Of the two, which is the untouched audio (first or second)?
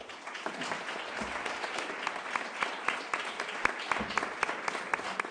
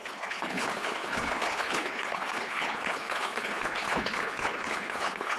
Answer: first